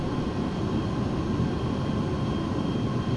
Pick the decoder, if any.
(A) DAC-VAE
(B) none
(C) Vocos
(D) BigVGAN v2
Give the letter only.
B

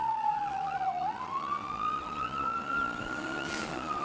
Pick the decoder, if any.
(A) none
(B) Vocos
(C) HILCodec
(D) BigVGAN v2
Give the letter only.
B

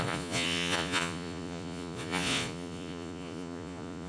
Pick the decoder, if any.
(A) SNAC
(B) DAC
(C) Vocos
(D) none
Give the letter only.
C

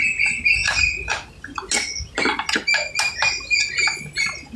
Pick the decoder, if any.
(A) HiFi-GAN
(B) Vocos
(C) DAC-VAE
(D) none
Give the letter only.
D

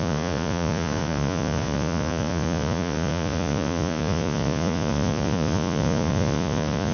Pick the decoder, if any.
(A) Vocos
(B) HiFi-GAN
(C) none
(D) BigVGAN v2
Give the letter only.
A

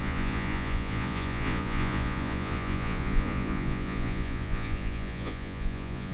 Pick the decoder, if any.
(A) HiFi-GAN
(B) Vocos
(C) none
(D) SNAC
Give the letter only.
B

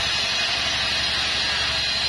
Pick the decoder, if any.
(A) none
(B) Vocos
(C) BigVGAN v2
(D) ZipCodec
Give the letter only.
A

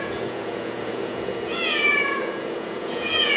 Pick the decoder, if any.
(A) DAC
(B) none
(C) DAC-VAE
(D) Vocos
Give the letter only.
D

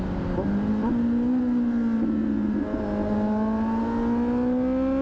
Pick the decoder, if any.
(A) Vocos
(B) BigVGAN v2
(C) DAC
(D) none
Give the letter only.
D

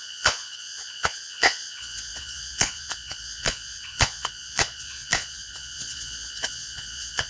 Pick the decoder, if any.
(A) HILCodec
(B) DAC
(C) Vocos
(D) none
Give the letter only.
C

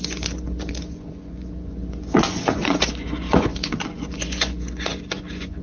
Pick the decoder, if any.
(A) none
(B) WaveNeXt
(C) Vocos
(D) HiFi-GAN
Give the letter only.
C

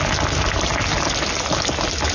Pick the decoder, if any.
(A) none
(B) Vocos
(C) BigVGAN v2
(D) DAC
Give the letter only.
A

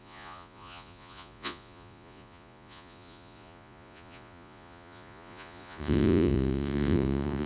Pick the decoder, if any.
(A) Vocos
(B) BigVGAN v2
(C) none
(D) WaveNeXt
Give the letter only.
A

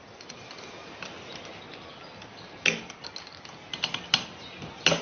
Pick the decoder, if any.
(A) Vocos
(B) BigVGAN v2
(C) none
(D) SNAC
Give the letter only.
C